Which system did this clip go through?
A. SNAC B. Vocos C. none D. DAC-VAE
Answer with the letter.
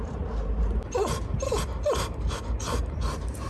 C